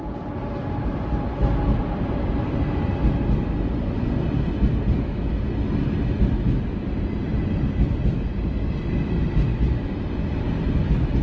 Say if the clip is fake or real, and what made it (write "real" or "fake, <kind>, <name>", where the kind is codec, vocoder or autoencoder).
real